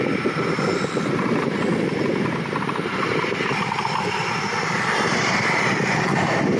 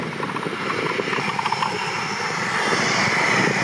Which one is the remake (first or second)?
first